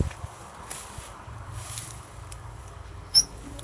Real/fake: fake